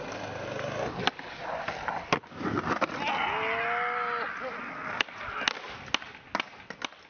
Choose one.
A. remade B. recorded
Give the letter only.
B